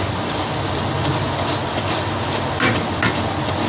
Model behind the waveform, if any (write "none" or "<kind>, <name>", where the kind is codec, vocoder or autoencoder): none